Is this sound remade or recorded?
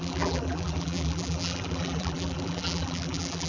remade